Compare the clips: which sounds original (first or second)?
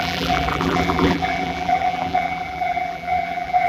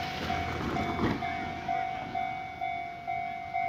second